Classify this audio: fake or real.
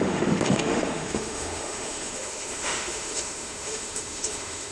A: fake